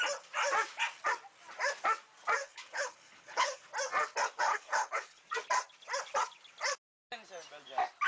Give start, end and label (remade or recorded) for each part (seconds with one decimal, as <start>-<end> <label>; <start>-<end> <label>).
0.0-2.4 recorded; 2.4-3.6 remade; 3.6-4.5 recorded; 4.5-5.2 remade; 5.2-8.1 recorded